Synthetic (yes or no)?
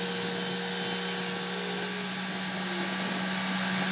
no